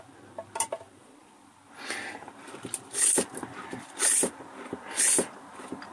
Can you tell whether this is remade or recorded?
recorded